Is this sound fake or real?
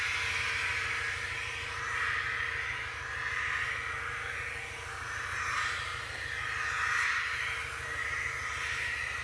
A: real